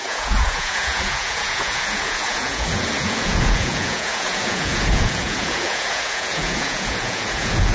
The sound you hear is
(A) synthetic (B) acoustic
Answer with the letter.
A